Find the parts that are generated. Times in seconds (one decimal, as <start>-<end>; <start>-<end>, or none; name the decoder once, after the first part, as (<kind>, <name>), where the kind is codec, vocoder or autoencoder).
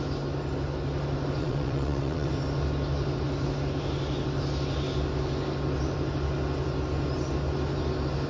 1.4-2.3 (vocoder, WaveNeXt)